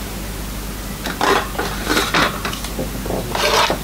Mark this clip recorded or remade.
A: recorded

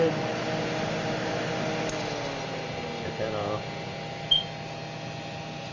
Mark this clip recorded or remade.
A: recorded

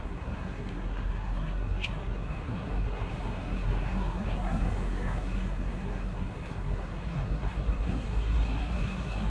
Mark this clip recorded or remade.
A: remade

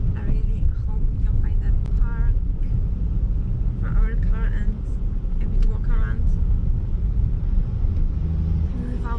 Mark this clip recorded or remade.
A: recorded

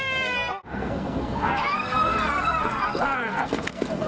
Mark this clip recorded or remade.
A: remade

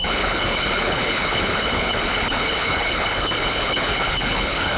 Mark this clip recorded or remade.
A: remade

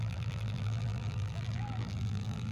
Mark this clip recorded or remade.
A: remade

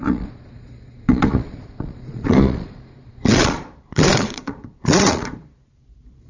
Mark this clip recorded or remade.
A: remade